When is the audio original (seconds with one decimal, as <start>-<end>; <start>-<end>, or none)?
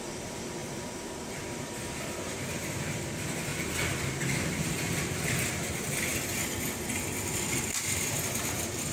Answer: 0.6-1.2; 3.5-5.5; 6.1-6.9